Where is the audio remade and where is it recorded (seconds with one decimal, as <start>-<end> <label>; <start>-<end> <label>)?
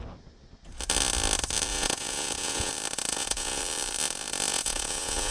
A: 0.0-1.7 recorded; 1.7-2.7 remade; 2.7-3.1 recorded; 3.1-3.6 remade; 3.6-4.5 recorded; 4.5-5.3 remade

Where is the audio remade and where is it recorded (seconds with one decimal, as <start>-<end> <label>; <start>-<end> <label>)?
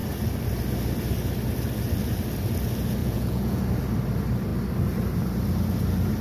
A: 0.0-3.0 recorded; 3.0-3.6 remade; 3.6-6.2 recorded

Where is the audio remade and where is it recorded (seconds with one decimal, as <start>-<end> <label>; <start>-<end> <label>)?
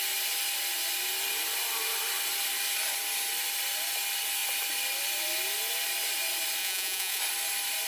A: 0.0-6.6 recorded; 6.6-7.2 remade; 7.2-7.9 recorded